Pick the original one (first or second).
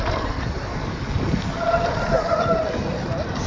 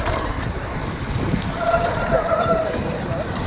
first